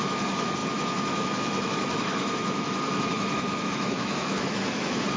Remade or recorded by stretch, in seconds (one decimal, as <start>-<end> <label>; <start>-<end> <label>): 0.0-5.2 remade